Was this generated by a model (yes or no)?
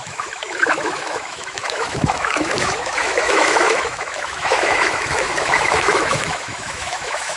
yes